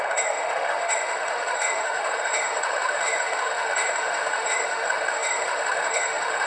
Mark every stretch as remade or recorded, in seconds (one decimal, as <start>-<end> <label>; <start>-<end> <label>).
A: 0.0-6.5 remade